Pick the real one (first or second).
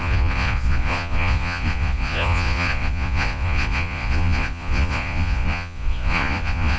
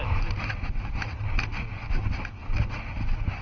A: second